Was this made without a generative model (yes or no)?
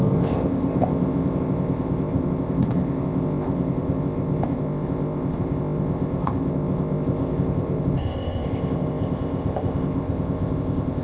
no